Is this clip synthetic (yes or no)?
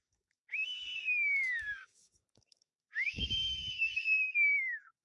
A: yes